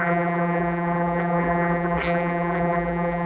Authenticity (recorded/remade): remade